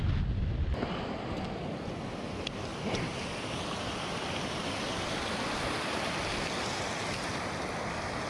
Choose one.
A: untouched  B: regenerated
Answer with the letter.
A